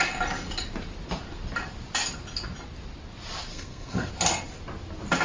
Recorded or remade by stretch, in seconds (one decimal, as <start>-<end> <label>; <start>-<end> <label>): 0.0-3.5 recorded; 3.5-4.1 remade; 4.1-5.2 recorded